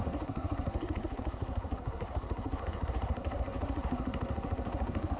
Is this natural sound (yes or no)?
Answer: no